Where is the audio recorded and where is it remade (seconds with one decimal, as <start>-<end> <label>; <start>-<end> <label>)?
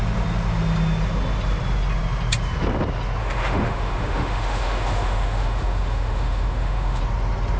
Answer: 0.0-3.2 recorded; 3.2-7.0 remade; 7.0-7.6 recorded